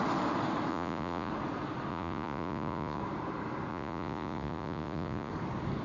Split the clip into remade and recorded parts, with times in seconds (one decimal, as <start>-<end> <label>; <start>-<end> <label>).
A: 0.0-0.7 recorded; 0.7-1.3 remade; 1.3-1.9 recorded; 1.9-3.0 remade; 3.0-3.7 recorded; 3.7-5.3 remade; 5.3-5.8 recorded